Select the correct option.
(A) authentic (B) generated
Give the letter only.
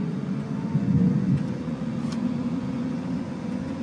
B